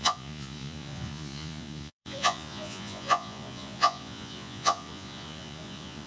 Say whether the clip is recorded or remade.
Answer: remade